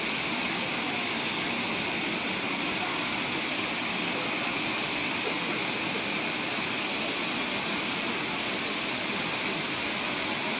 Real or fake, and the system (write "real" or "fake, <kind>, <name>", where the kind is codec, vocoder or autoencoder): real